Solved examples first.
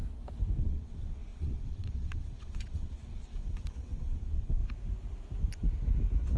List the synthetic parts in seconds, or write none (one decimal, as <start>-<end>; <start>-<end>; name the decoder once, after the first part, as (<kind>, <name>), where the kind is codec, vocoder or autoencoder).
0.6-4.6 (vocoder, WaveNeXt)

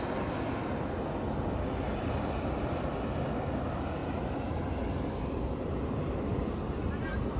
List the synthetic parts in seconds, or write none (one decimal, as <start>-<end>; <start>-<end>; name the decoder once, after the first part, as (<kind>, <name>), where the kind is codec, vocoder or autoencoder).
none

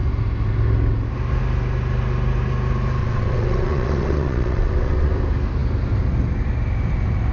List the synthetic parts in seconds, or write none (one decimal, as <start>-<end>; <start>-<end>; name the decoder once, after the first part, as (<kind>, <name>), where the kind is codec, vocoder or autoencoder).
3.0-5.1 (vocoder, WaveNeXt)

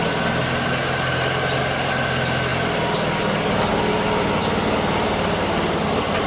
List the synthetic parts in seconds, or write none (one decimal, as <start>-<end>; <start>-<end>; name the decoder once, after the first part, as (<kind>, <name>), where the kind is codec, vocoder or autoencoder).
none

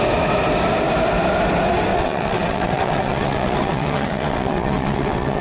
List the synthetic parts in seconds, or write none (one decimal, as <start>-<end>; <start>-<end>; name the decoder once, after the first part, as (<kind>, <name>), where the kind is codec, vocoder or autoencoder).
1.9-5.4 (vocoder, WaveNeXt)